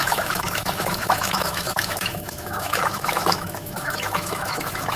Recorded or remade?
remade